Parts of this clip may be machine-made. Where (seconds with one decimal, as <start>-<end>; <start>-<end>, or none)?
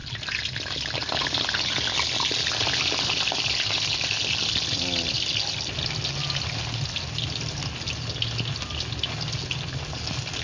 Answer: none